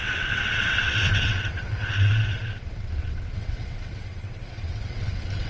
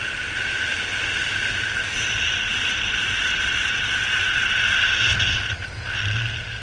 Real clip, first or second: second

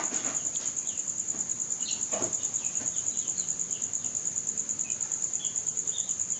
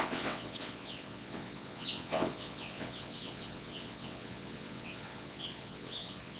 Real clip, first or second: first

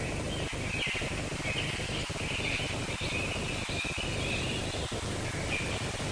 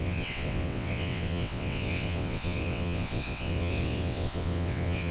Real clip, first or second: first